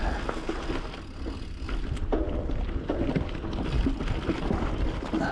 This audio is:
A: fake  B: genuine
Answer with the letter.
B